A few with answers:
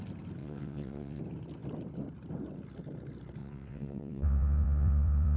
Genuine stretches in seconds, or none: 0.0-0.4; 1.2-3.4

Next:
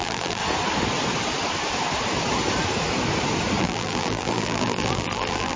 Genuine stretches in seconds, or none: 0.4-3.6

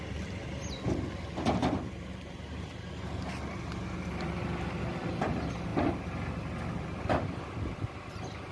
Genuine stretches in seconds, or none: 0.0-8.5

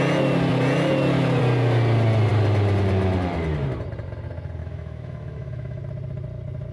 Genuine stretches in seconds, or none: 0.0-4.6; 5.8-6.7

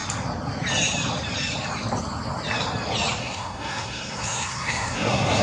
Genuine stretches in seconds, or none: 0.0-3.2

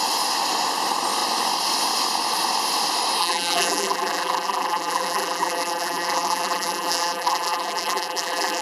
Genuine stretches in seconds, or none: 0.0-3.2

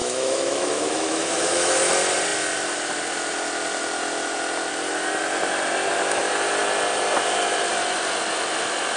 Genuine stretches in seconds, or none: 1.9-9.0